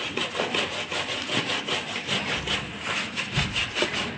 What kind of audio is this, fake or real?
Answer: real